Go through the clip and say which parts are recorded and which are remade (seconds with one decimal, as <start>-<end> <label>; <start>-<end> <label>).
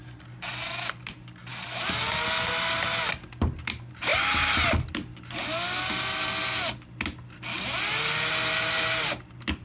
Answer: 0.0-9.6 recorded